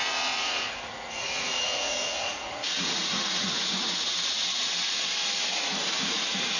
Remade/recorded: remade